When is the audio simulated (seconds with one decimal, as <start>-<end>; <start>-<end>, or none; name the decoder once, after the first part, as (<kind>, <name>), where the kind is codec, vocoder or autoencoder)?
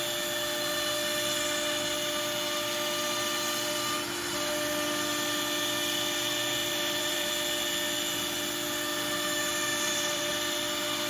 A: 6.6-7.3 (vocoder, BigVGAN v2); 9.7-10.3